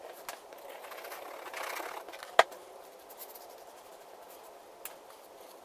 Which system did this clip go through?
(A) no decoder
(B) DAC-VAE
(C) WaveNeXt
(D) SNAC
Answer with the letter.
A